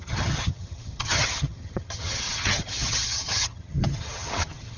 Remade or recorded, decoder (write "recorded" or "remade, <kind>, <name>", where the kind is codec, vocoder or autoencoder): remade, vocoder, HiFi-GAN